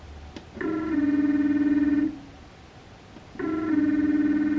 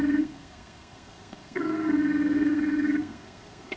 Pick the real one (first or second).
first